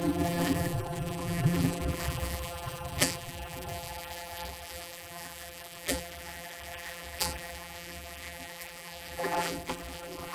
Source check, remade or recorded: remade